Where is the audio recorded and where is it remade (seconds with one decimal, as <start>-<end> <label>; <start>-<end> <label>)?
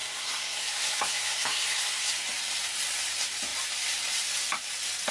0.0-2.1 remade; 2.1-5.1 recorded